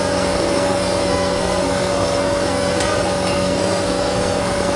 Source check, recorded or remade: remade